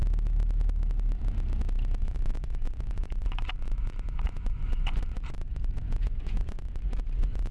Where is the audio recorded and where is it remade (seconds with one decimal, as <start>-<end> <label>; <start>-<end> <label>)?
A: 0.0-2.0 recorded; 2.0-7.5 remade